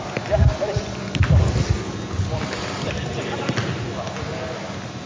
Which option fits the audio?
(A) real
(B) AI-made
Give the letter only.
A